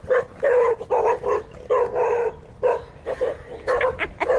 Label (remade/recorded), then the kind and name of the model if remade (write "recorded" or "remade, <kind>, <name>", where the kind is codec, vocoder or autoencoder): recorded